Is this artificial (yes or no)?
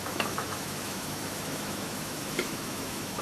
yes